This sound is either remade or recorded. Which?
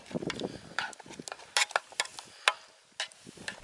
recorded